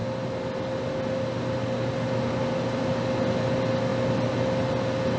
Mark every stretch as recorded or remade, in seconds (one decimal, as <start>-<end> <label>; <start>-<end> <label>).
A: 0.0-5.2 recorded